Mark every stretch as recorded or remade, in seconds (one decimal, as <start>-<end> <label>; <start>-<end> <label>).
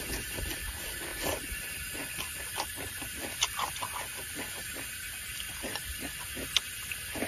0.0-7.3 recorded